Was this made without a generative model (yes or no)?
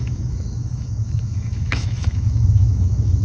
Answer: no